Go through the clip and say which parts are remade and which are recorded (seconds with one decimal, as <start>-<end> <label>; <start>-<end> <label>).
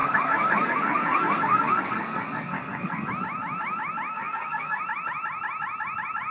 0.0-3.1 remade; 3.1-4.1 recorded; 4.1-4.8 remade; 4.8-6.3 recorded